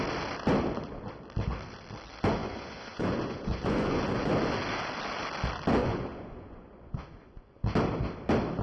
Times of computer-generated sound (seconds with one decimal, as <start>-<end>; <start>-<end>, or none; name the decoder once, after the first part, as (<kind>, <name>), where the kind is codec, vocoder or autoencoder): 2.4-4.3 (vocoder, Vocos); 5.8-7.6